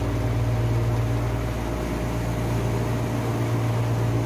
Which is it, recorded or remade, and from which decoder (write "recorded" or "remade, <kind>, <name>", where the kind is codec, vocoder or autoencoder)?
recorded